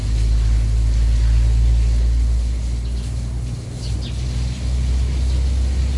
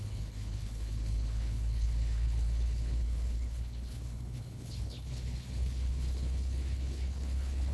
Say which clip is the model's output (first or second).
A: second